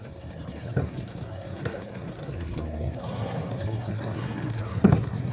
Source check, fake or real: fake